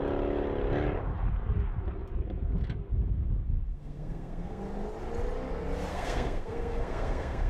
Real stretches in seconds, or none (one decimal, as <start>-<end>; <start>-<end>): 0.0-3.7; 4.6-5.9